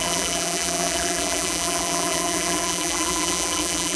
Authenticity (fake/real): fake